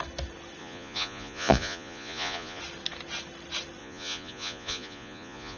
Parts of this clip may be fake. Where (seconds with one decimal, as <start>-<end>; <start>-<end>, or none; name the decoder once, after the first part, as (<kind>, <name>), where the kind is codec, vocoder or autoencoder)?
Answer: 0.6-2.6 (vocoder, Vocos); 3.8-5.6